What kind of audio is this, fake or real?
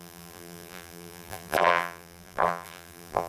fake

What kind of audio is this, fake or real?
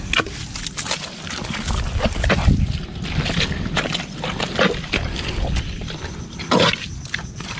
real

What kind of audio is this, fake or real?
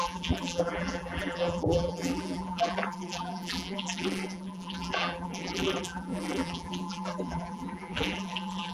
fake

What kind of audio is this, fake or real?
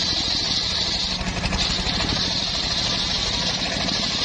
real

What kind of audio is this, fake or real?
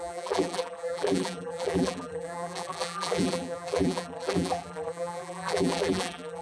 fake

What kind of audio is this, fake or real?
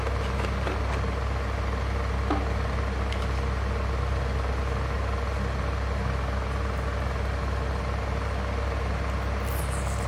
real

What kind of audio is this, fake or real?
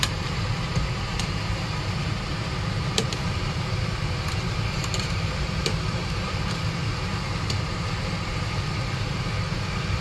fake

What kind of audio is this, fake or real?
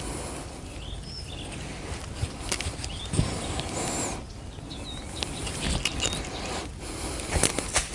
real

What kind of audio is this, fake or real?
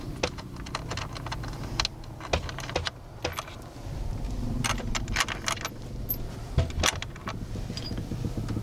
real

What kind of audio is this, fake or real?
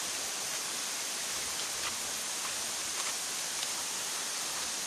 real